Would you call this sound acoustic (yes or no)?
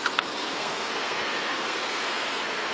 no